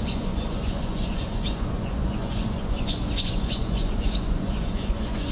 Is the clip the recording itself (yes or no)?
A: no